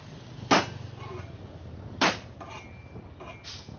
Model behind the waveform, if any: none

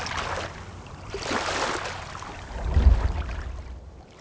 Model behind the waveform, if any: none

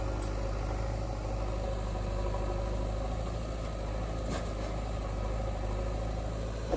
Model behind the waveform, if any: none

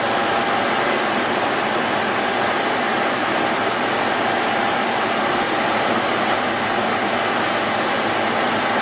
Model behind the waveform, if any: none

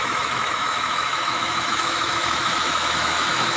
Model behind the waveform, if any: autoencoder, DAC-VAE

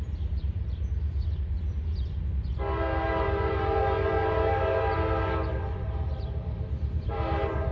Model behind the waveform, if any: vocoder, BigVGAN v2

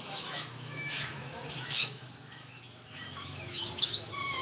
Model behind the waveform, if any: autoencoder, DAC-VAE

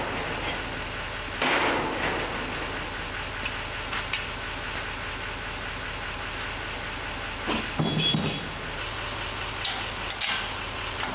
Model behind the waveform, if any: none